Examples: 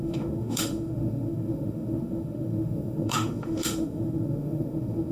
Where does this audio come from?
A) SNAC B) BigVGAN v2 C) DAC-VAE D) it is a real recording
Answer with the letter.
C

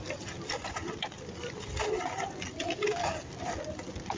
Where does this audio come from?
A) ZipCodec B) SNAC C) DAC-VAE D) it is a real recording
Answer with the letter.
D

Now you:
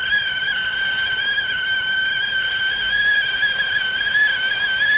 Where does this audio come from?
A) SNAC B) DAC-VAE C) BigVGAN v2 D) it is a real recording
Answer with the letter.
D